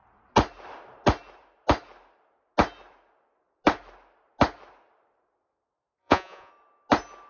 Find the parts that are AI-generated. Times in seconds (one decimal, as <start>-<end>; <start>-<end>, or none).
6.0-6.5